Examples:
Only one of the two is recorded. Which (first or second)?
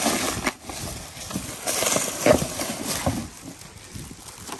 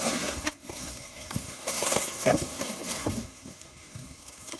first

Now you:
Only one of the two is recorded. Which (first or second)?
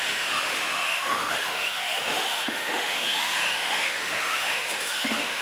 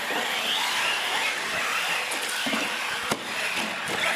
second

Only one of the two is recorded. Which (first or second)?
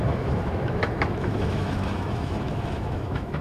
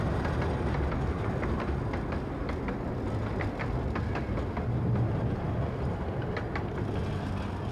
second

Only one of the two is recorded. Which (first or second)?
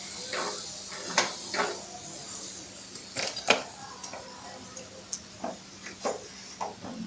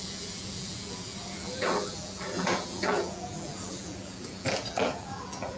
first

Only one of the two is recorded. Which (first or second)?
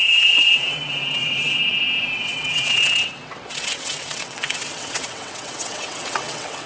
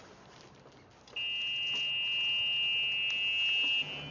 second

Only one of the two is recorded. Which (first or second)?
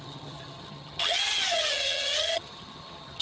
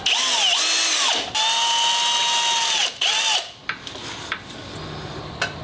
second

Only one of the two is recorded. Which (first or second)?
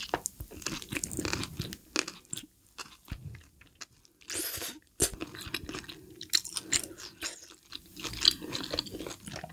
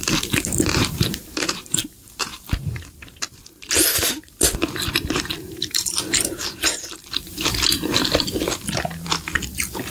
first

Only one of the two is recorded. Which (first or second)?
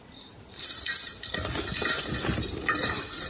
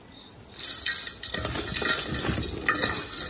second